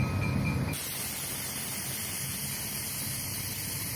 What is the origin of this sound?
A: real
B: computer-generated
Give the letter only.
A